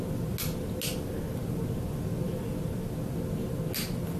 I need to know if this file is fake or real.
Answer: real